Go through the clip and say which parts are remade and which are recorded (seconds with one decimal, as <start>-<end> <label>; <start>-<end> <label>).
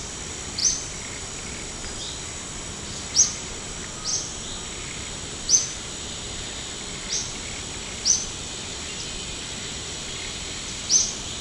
0.0-11.4 recorded